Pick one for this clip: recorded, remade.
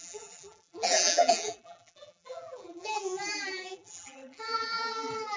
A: remade